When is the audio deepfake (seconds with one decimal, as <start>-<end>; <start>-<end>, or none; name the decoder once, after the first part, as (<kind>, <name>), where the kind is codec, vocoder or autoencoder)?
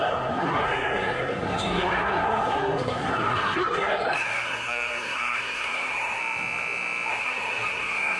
0.0-6.2 (codec, SNAC); 7.1-8.2